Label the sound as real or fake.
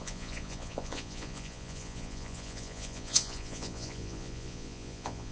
fake